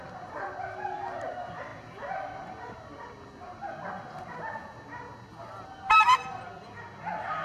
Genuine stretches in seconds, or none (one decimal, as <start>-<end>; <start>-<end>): 0.0-7.4